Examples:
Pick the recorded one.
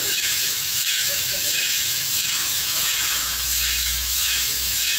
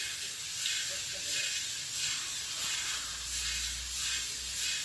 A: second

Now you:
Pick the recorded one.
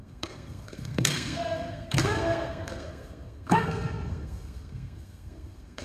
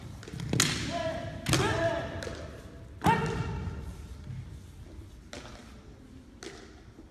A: second